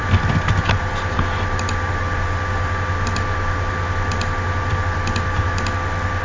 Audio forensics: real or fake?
real